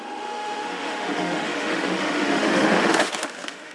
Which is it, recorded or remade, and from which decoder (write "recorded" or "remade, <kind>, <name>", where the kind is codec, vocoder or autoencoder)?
remade, autoencoder, DAC-VAE